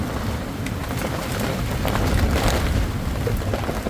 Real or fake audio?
real